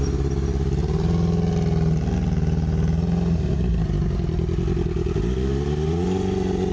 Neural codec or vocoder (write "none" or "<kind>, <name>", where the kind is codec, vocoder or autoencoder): none